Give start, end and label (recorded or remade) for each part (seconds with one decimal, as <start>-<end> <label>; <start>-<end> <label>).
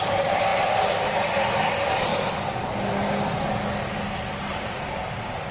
0.0-2.1 remade; 2.1-4.5 recorded; 4.5-5.5 remade